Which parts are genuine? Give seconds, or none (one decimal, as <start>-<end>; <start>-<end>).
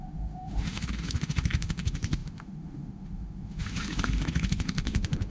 none